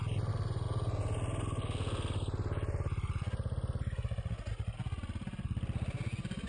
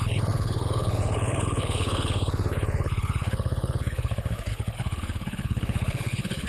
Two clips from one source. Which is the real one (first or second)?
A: first